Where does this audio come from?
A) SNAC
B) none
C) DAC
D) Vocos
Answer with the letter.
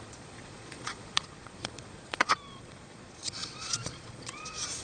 D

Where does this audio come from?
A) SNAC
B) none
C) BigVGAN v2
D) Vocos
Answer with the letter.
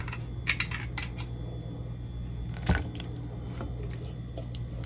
B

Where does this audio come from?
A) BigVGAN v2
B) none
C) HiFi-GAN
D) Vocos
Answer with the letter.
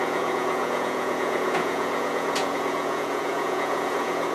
D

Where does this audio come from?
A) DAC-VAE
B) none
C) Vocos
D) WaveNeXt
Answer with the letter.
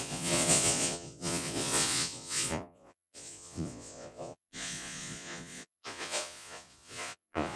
C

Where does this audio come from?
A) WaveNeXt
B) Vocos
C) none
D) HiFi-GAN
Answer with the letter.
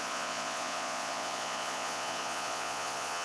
B